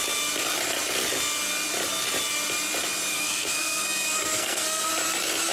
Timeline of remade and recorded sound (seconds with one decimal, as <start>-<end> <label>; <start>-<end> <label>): 0.0-3.1 recorded; 3.1-4.9 remade; 4.9-5.5 recorded